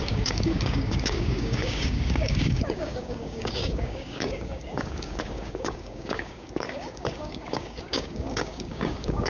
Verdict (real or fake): fake